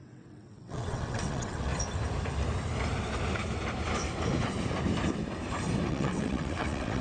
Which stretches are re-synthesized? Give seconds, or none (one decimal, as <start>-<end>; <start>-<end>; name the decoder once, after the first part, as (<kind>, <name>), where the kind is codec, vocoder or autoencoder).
0.0-1.7 (vocoder, WaveNeXt); 5.9-7.0